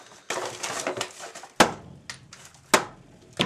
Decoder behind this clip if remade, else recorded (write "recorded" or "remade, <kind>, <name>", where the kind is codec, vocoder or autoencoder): recorded